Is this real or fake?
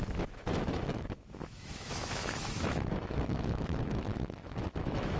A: fake